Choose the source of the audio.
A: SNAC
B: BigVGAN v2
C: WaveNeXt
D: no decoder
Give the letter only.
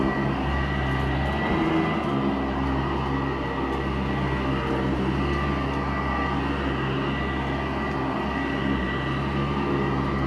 D